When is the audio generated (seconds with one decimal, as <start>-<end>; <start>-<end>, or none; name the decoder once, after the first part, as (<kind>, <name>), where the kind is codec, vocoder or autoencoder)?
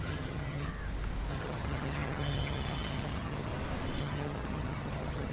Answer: 0.0-0.7 (vocoder, HiFi-GAN); 1.3-3.5; 4.0-5.3